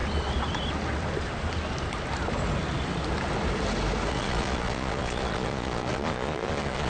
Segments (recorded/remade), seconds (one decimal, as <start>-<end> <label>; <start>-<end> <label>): 0.0-4.1 recorded; 4.1-6.9 remade